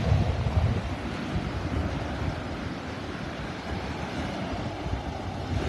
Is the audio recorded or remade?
recorded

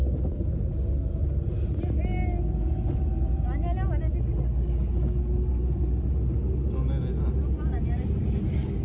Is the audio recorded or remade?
recorded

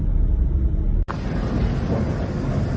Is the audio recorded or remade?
recorded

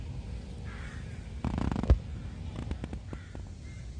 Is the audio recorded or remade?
recorded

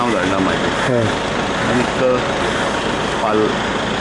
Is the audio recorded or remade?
recorded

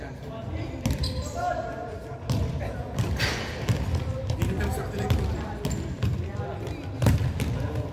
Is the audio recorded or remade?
recorded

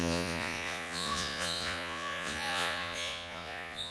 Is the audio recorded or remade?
remade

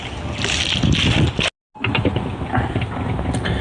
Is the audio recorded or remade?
recorded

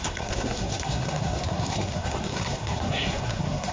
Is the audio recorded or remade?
remade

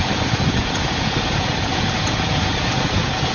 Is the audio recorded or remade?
remade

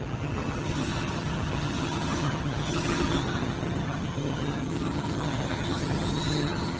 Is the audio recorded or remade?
remade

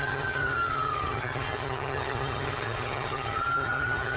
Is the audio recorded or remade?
remade